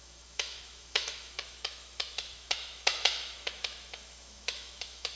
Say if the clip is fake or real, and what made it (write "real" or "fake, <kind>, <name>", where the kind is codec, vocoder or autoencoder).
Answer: fake, autoencoder, DAC-VAE